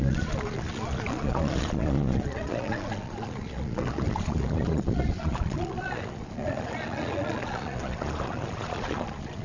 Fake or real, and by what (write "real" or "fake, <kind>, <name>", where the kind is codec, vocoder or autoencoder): fake, vocoder, Vocos